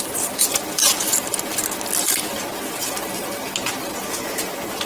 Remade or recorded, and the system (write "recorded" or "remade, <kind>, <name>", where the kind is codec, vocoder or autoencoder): recorded